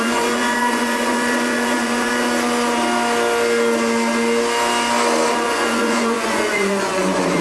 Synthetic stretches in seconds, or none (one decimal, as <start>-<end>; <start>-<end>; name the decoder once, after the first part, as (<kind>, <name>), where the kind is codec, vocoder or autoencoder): 0.0-2.1 (vocoder, Vocos); 5.3-7.4